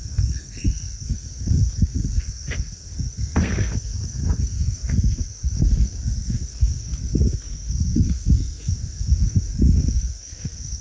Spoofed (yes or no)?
yes